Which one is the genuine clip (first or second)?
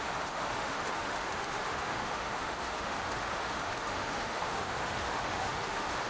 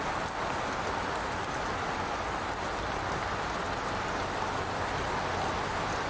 second